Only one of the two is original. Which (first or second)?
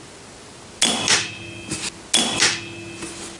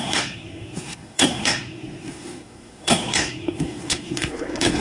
first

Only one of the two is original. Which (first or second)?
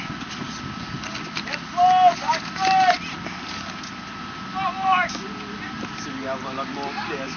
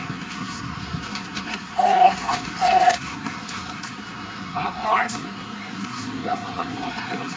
first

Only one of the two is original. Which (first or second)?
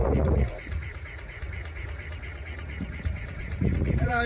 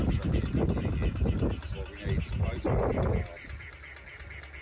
second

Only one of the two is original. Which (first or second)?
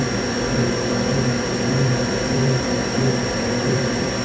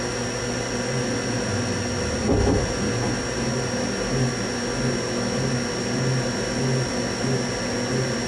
second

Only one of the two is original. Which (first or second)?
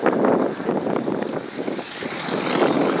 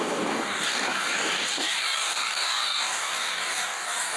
first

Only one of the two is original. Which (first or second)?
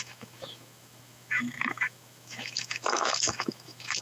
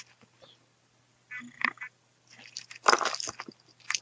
second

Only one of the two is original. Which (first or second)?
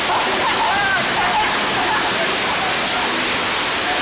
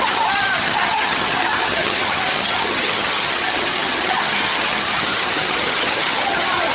first